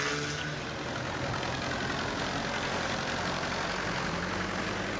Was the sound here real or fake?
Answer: real